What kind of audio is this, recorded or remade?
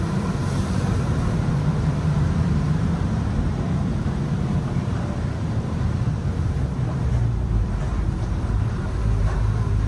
remade